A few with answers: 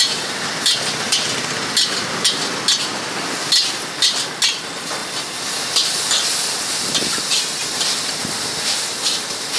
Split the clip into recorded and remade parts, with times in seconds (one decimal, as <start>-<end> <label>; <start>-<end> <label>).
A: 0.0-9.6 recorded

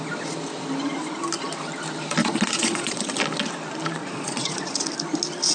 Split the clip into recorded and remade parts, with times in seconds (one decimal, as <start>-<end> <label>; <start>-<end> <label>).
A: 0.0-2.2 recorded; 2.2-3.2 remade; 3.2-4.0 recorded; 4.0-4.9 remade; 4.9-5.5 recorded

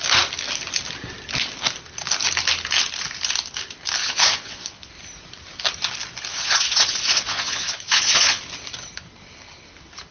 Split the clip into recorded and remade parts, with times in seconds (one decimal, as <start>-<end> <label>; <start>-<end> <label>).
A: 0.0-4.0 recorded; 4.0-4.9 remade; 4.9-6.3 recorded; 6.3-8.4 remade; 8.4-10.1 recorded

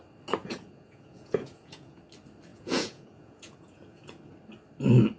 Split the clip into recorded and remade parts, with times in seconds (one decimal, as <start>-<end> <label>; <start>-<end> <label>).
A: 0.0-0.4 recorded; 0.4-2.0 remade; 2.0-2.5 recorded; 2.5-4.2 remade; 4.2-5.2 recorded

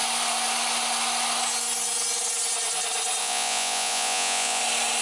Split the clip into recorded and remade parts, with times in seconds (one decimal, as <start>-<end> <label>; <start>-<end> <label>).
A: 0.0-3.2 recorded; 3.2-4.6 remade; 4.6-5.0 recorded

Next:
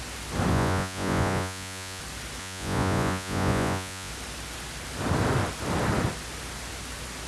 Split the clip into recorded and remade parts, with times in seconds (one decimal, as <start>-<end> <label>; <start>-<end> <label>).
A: 0.0-0.5 recorded; 0.5-2.0 remade; 2.0-2.4 recorded; 2.4-4.1 remade; 4.1-7.3 recorded

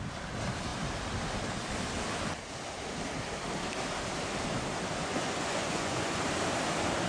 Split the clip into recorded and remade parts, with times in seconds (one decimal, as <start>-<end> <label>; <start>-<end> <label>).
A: 0.0-5.0 recorded; 5.0-6.2 remade; 6.2-7.1 recorded